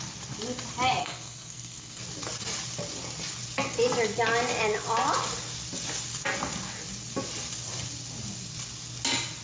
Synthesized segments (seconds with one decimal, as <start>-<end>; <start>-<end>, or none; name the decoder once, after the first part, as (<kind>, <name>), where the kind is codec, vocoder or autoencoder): 1.0-2.0 (codec, SNAC)